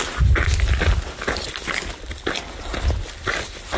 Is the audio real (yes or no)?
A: yes